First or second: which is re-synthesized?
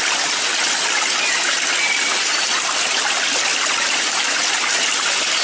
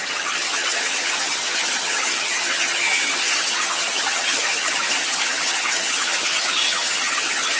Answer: second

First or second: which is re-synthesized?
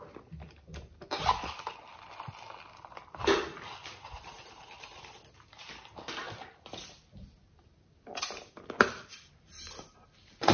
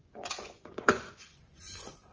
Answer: second